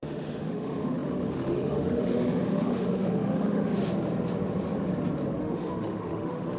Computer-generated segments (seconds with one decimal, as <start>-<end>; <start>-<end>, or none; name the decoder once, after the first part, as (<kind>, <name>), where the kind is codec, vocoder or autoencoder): 0.0-3.7 (autoencoder, DAC-VAE); 5.4-6.6